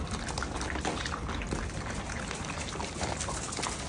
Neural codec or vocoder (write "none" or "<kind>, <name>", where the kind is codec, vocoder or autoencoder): none